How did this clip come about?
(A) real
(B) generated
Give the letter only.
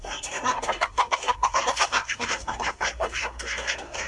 B